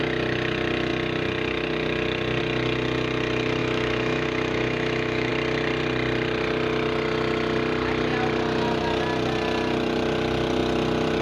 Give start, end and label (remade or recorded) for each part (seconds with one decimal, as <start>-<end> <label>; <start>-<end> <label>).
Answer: 0.0-3.6 recorded; 3.6-5.3 remade; 5.3-11.2 recorded